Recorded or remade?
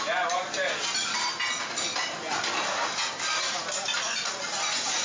recorded